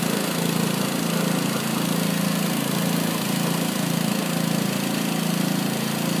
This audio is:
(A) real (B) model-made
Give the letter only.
A